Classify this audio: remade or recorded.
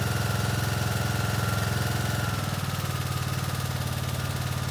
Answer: recorded